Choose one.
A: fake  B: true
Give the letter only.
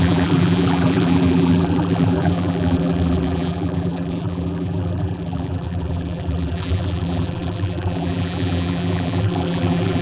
A